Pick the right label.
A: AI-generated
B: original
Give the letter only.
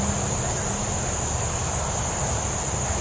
B